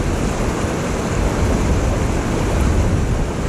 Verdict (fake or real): real